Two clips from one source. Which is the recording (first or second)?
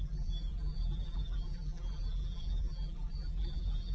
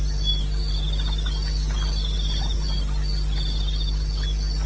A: second